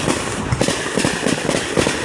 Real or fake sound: real